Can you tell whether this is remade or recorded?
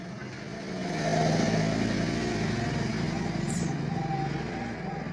recorded